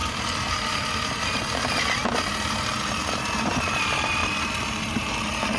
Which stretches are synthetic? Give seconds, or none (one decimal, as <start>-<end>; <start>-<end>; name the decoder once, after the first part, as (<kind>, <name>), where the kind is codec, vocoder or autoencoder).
4.2-4.8 (vocoder, BigVGAN v2)

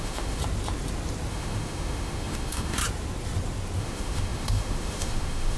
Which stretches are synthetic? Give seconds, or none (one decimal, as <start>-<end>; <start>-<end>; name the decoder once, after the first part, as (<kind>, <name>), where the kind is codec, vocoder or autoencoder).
0.0-0.4 (autoencoder, DAC-VAE); 1.3-2.8; 3.8-5.6

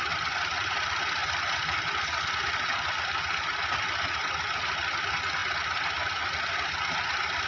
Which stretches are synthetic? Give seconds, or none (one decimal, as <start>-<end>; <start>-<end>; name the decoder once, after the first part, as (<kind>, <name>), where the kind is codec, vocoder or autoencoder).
none

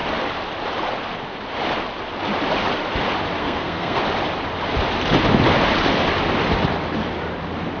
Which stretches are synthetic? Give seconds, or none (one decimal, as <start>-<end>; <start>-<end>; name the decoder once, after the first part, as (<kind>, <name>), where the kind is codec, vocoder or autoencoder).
3.4-4.0 (codec, SNAC)

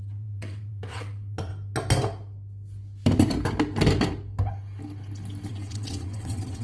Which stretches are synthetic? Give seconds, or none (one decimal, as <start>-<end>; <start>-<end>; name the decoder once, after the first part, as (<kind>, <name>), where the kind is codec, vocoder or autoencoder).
0.0-1.5 (vocoder, WaveNeXt); 5.5-6.6